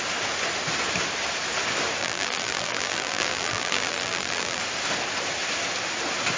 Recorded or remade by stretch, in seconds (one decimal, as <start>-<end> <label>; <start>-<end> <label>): 0.0-2.0 recorded; 2.0-4.6 remade; 4.6-6.4 recorded